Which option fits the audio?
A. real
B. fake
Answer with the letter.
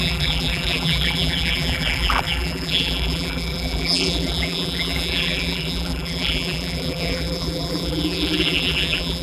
B